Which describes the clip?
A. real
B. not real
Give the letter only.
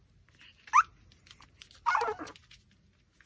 A